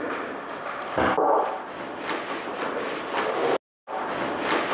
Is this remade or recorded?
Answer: recorded